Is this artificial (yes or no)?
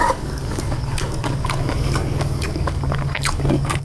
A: yes